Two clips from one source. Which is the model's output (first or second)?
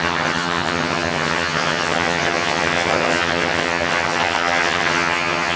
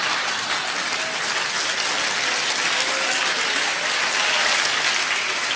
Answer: first